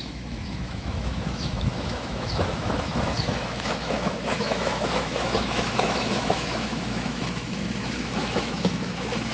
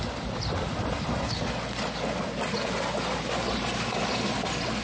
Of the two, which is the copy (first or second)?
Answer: first